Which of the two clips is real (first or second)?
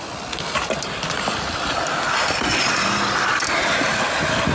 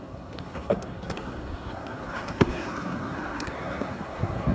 first